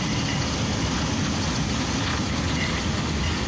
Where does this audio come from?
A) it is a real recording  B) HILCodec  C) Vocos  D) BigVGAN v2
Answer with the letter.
A